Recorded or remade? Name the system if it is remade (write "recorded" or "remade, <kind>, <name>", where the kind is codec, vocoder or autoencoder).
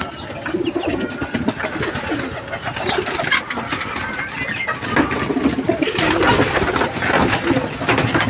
recorded